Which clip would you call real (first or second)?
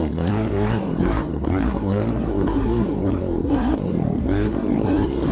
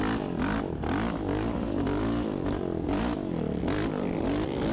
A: second